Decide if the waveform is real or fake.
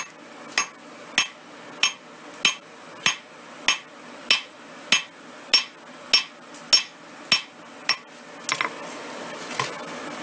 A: real